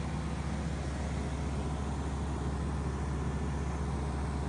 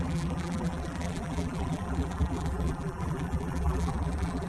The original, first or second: first